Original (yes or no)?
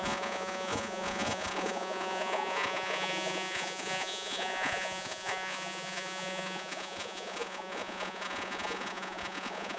no